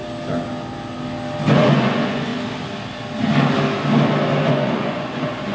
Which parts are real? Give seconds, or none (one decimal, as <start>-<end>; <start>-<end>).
0.0-1.5; 2.3-4.5